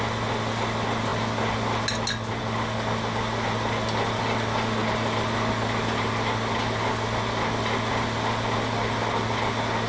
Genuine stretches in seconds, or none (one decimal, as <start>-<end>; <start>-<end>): 0.0-9.9

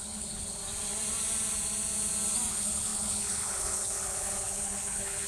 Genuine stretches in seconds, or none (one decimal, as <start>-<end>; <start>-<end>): 0.6-2.5

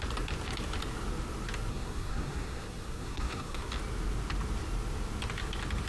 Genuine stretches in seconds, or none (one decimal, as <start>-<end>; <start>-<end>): 0.0-1.7; 3.7-5.9

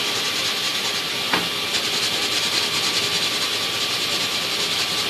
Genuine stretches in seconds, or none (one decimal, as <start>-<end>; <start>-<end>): 0.0-5.1

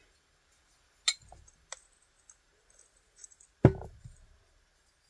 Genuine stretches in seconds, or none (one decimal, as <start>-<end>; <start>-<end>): 0.0-5.1

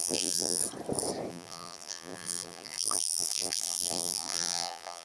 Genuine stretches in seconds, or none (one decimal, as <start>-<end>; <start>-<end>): 0.6-1.3